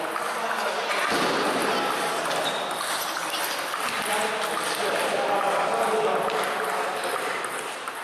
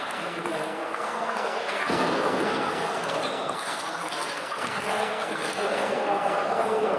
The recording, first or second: first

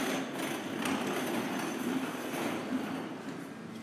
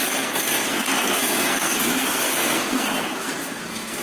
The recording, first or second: first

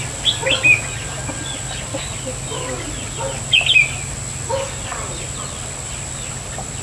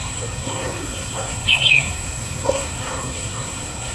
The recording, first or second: first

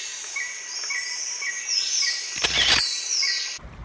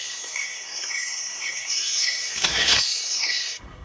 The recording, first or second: first